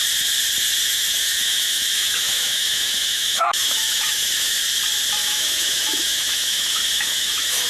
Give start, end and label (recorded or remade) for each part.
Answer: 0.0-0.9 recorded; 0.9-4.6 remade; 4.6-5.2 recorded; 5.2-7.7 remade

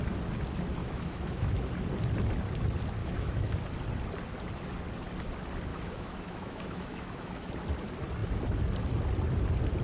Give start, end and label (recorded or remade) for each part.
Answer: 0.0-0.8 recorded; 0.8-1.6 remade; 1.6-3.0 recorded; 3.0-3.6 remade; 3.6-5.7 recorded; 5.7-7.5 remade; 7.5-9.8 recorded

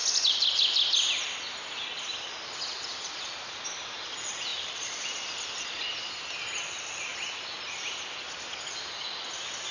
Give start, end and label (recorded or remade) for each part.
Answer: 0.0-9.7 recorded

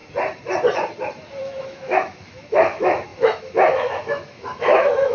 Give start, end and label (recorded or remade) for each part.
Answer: 0.0-1.4 recorded; 1.4-5.1 remade

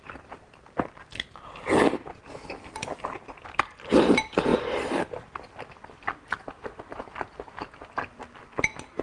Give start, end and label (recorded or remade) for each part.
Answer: 0.0-9.0 recorded

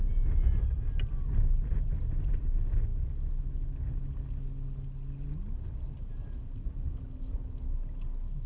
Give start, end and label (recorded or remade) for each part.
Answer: 0.0-8.5 recorded

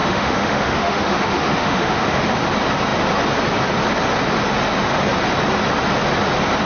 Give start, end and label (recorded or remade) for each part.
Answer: 0.0-2.2 remade; 2.2-6.7 recorded